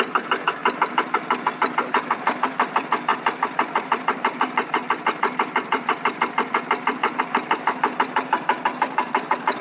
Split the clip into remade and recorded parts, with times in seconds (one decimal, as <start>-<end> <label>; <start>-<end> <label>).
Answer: 0.0-9.6 remade